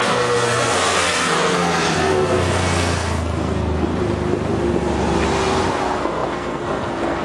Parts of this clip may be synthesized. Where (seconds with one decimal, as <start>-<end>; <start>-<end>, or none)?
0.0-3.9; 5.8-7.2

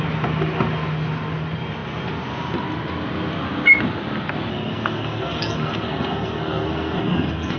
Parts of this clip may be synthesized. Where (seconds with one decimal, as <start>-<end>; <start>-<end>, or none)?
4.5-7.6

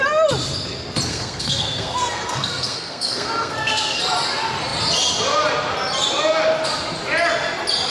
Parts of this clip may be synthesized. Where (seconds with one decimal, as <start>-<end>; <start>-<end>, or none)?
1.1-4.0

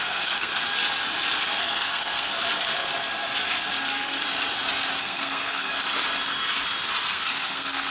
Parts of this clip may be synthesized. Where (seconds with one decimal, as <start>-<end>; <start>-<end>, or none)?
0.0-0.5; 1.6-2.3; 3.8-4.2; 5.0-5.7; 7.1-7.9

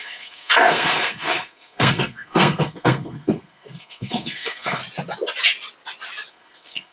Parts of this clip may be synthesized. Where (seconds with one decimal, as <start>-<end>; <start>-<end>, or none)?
0.0-4.8; 6.3-6.9